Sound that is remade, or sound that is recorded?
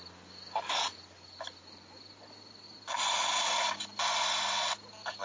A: recorded